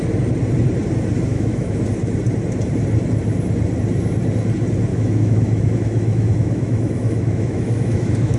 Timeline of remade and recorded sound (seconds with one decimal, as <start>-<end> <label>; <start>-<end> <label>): 0.0-1.3 recorded; 1.3-1.9 remade; 1.9-4.9 recorded; 4.9-8.4 remade